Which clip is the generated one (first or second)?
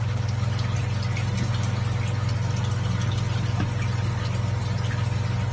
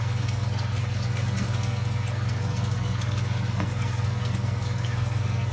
second